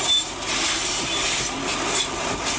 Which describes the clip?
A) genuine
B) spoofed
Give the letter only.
B